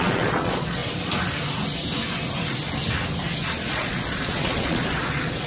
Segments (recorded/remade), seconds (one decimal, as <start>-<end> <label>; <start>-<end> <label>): 0.0-0.8 remade; 0.8-3.7 recorded; 3.7-5.5 remade